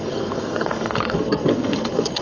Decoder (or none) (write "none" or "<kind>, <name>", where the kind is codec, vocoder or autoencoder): codec, SNAC